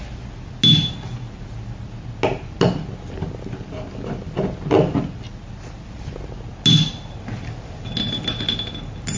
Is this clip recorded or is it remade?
recorded